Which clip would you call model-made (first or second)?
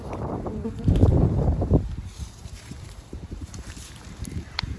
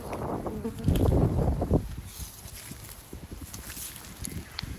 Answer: first